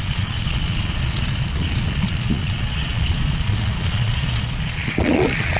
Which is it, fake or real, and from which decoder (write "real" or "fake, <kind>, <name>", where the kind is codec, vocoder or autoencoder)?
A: fake, vocoder, Vocos